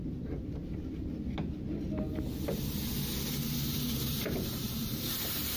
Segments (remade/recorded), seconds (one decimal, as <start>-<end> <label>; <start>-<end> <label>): 0.0-5.6 recorded